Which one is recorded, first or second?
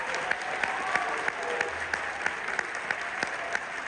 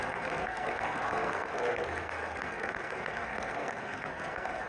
first